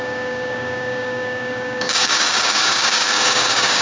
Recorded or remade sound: remade